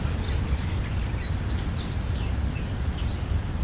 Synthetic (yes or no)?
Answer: no